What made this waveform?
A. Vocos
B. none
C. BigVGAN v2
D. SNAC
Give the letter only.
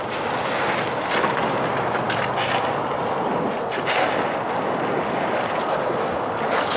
B